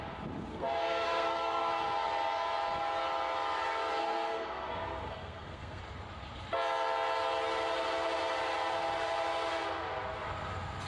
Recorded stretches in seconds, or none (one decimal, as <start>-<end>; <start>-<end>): 0.0-0.5; 1.7-4.0; 5.8-10.9